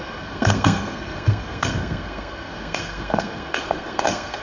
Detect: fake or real fake